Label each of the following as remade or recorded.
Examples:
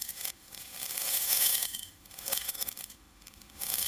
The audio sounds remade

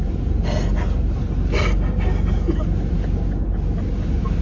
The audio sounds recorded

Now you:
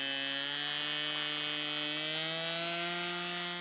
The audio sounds recorded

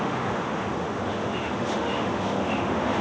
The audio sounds remade